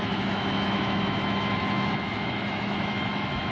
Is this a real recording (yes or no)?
no